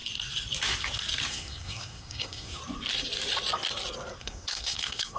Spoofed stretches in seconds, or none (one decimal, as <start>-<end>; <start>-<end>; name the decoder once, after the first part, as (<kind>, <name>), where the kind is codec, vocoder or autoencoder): 1.3-2.6 (codec, SNAC); 4.2-5.2